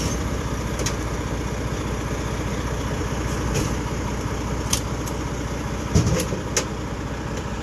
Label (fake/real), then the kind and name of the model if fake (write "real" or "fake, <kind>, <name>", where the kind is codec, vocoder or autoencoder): real